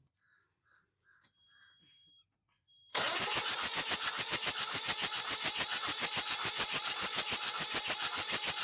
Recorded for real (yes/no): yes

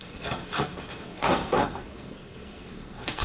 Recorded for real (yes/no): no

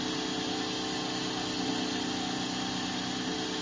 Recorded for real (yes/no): yes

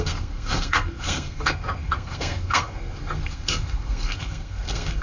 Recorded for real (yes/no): no